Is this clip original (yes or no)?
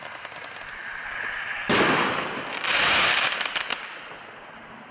yes